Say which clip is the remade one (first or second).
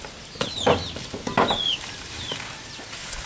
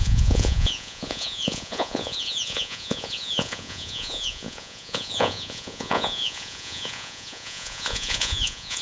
second